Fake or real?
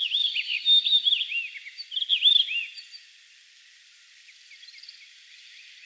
real